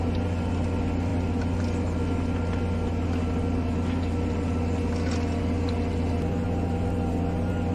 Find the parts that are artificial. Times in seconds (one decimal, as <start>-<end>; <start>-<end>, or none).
none